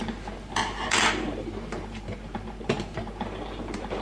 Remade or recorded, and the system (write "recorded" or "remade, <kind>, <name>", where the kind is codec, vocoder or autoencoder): remade, vocoder, BigVGAN v2